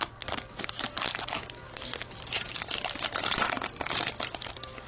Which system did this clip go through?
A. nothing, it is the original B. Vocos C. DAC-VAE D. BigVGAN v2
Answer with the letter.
A